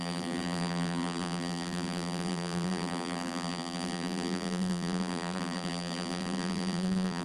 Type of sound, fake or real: fake